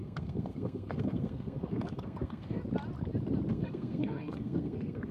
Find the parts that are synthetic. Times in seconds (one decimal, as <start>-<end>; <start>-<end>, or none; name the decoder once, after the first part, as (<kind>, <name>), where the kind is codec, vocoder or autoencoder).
0.0-2.6 (codec, SNAC); 3.5-5.1